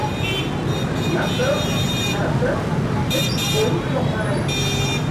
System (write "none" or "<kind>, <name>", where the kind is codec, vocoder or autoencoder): none